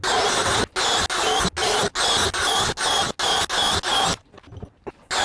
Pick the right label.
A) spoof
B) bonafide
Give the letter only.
B